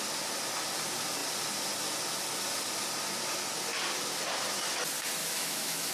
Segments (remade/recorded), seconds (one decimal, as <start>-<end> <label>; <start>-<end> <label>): 0.0-5.2 recorded; 5.2-5.9 remade